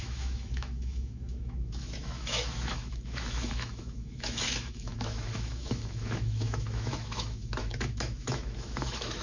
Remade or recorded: remade